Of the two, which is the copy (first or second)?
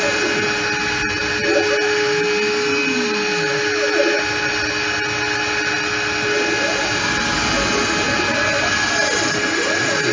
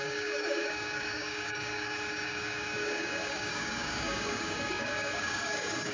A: second